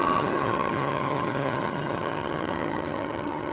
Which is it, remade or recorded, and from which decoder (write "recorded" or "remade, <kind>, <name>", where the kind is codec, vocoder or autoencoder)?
remade, vocoder, HiFi-GAN